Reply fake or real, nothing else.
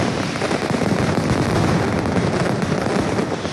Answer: real